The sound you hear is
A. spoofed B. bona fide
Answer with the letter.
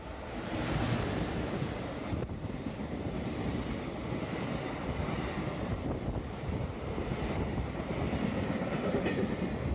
A